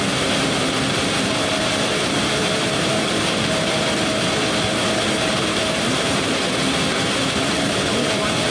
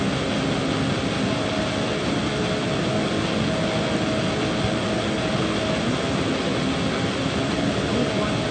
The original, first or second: second